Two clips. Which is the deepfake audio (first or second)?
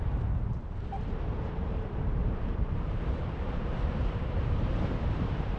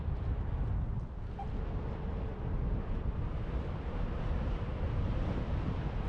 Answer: first